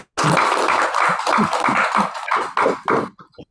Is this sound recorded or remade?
recorded